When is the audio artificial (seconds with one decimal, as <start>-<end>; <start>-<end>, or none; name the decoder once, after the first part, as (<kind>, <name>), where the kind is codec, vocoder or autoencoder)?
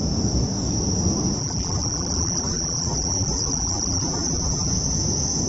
1.4-4.7 (vocoder, BigVGAN v2)